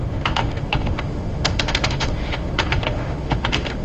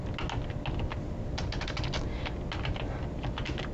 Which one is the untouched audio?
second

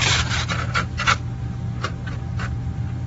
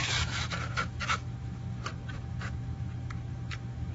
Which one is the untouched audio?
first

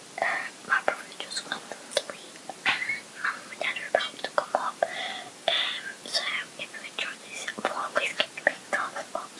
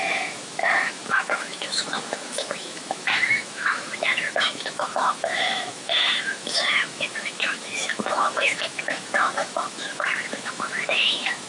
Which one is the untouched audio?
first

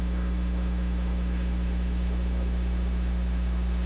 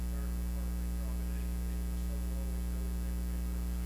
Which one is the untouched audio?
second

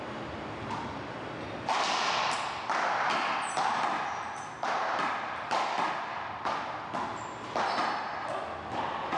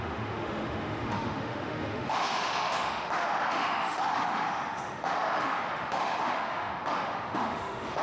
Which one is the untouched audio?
first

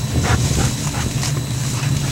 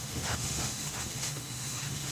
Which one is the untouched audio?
first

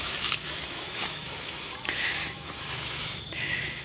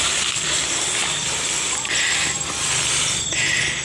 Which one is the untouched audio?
second